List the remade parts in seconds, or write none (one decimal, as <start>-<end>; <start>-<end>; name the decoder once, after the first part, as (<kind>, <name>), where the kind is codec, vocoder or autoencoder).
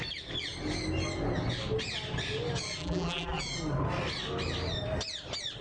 2.8-3.4 (vocoder, BigVGAN v2)